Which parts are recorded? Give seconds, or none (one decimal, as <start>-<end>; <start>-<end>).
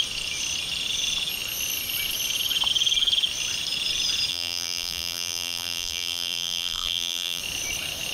0.0-4.3; 7.4-8.1